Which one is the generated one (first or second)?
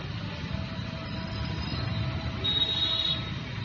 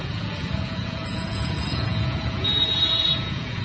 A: second